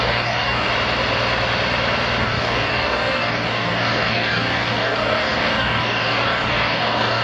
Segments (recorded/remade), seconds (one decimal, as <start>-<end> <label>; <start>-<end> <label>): 0.0-0.7 remade; 0.7-2.2 recorded; 2.2-7.2 remade